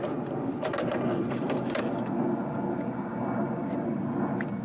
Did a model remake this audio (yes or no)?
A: no